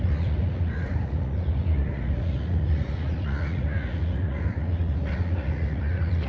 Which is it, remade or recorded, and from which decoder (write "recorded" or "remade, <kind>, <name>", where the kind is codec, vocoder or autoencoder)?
remade, vocoder, Vocos